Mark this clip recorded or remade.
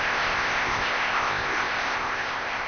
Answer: remade